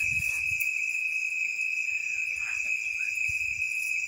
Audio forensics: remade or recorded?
recorded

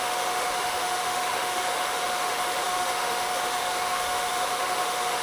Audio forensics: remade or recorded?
remade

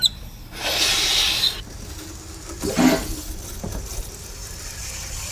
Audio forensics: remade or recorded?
recorded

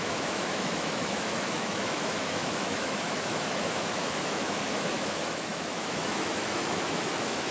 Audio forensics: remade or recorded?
remade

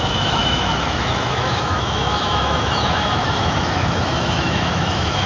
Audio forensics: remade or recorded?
remade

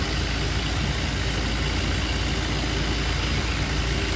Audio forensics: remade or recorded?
recorded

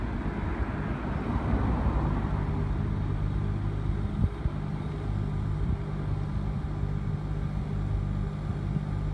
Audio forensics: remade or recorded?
recorded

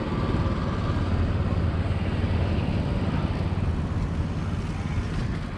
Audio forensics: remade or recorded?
recorded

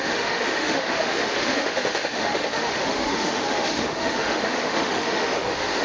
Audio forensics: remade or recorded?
remade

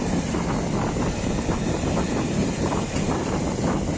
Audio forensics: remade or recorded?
recorded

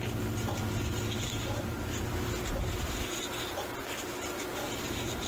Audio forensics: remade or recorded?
recorded